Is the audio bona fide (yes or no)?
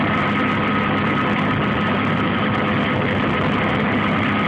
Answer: yes